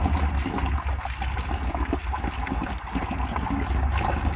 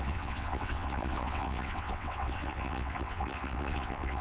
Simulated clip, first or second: second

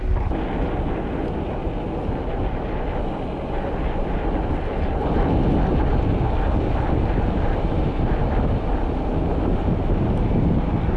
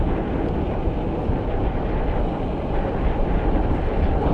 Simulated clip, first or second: second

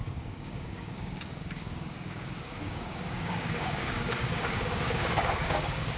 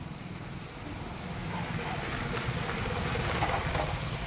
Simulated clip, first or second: first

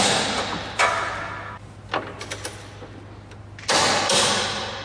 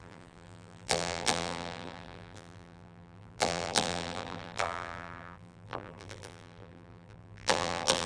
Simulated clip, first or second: second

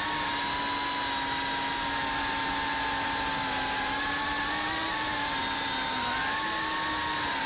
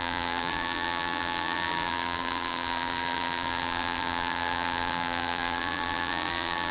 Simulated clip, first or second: second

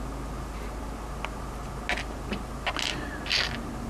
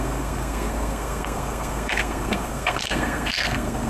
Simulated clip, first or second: second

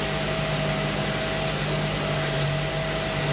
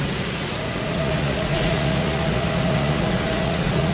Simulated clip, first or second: second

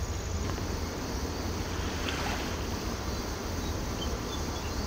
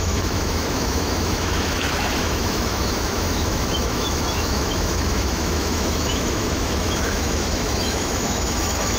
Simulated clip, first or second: second